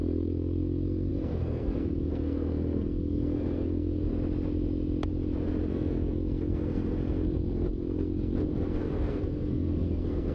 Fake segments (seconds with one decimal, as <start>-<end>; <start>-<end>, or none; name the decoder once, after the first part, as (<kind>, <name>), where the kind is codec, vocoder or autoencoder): 0.0-4.1 (codec, SNAC); 5.7-10.3